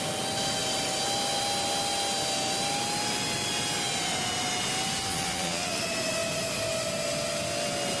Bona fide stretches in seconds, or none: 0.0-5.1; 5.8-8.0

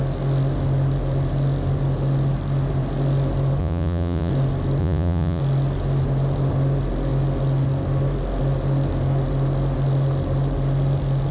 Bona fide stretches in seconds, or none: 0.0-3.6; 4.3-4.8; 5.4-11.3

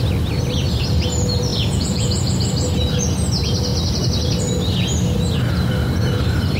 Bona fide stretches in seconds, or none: 0.0-1.5; 2.3-6.6

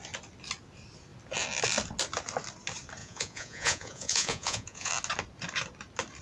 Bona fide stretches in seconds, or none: 0.0-3.0; 4.9-6.2